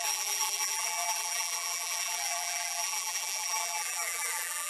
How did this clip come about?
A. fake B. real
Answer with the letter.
A